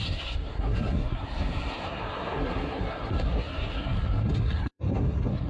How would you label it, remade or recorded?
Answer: remade